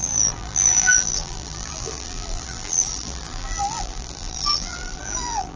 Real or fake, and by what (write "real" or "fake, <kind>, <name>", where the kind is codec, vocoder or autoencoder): fake, vocoder, BigVGAN v2